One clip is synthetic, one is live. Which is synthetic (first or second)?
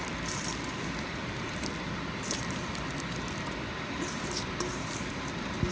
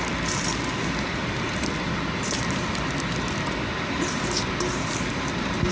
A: first